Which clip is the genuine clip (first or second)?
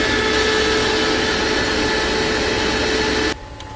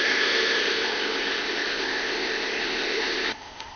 first